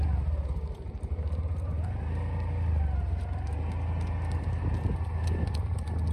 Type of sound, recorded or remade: recorded